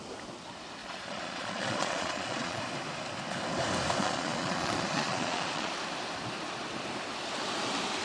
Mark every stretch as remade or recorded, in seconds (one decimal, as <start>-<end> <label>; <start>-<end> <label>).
0.0-0.8 recorded; 0.8-2.6 remade; 2.6-4.0 recorded; 4.0-5.7 remade; 5.7-8.0 recorded